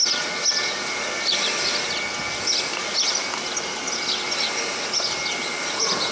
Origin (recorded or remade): recorded